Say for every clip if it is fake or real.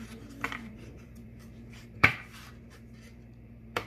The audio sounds fake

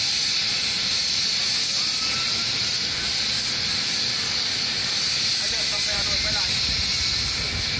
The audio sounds real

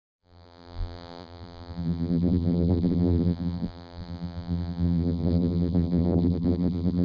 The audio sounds fake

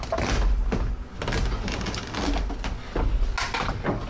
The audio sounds real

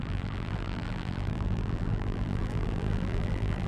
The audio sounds fake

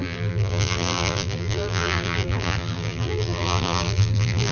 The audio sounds fake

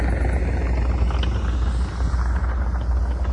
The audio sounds real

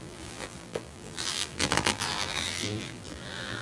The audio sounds fake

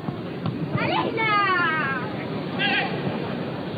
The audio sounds real